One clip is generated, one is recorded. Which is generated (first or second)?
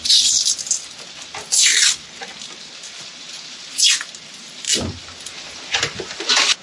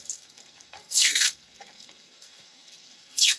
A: second